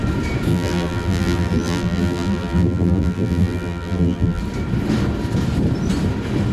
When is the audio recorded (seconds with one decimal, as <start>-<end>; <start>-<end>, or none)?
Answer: 0.0-0.5; 4.4-6.5